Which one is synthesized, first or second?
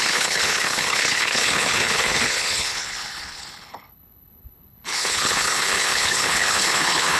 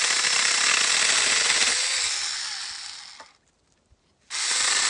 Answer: first